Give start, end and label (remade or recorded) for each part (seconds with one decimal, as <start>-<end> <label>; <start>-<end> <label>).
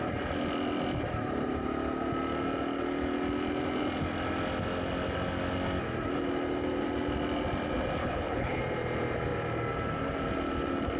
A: 0.0-8.0 recorded; 8.0-8.6 remade; 8.6-11.0 recorded